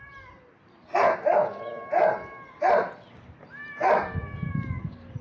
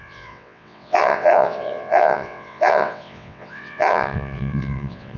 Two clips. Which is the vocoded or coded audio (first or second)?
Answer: second